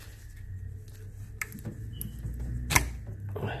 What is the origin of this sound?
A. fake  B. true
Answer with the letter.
B